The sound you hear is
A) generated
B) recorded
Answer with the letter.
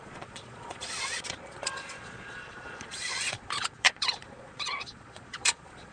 A